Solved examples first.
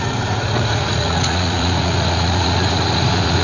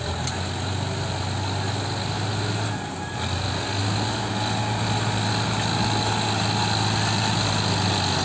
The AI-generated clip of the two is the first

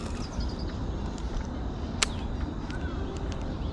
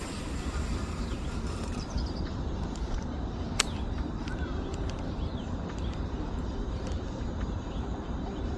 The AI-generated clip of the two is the second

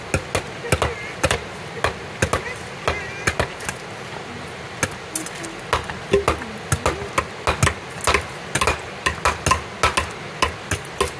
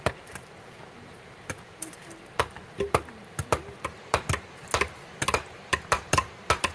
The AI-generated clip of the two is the second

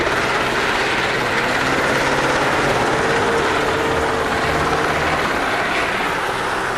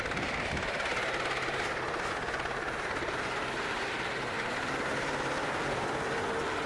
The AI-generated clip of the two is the second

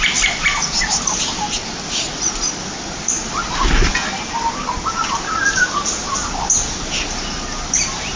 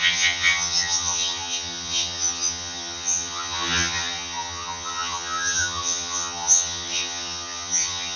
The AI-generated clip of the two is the second